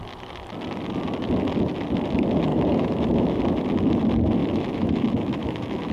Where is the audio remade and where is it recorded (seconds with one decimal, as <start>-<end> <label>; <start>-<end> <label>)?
0.0-2.5 recorded; 2.5-3.4 remade; 3.4-4.4 recorded; 4.4-5.9 remade